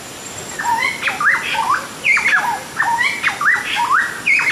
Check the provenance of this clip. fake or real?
real